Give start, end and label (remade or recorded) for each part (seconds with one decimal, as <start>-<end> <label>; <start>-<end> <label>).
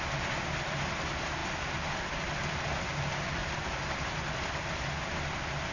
0.0-3.4 recorded; 3.4-4.2 remade; 4.2-5.7 recorded